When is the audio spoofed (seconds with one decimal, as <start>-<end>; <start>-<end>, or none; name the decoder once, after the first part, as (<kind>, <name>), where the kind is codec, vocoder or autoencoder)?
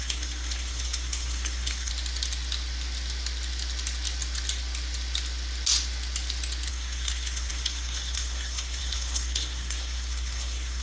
0.0-1.9 (codec, SNAC); 6.7-10.8